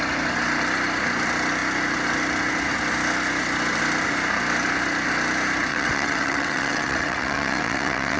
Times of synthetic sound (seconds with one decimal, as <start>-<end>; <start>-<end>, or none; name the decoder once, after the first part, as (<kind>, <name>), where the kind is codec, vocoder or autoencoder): 5.7-8.2 (vocoder, WaveNeXt)